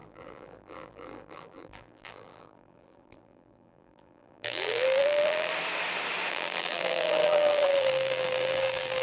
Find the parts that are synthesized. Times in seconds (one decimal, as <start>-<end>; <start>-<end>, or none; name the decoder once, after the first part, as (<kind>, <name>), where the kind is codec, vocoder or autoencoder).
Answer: 0.0-5.5 (vocoder, BigVGAN v2); 6.3-9.0